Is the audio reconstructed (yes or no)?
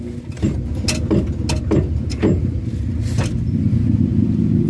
no